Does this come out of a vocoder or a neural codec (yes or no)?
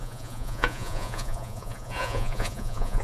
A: yes